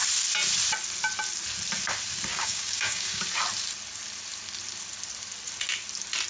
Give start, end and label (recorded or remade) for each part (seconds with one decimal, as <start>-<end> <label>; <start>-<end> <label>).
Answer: 0.0-2.3 recorded; 2.3-3.2 remade; 3.2-6.3 recorded